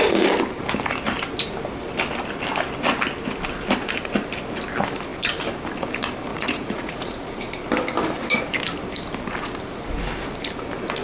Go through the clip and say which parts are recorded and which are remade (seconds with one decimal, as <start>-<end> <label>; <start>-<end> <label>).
0.0-6.3 recorded; 6.3-7.3 remade; 7.3-11.0 recorded